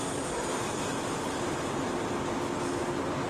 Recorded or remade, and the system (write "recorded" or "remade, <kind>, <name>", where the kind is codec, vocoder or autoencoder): recorded